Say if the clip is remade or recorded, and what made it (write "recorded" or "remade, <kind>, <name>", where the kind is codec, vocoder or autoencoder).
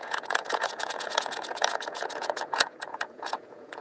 remade, vocoder, Vocos